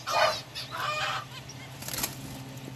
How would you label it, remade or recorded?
recorded